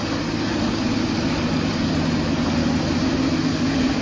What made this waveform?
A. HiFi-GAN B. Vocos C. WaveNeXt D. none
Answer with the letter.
D